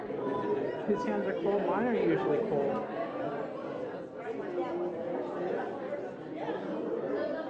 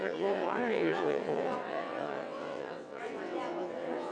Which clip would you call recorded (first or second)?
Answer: first